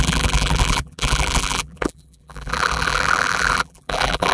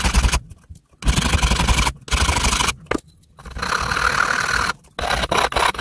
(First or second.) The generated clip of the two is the first